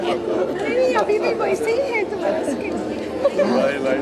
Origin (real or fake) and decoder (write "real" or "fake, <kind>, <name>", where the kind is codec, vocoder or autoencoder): real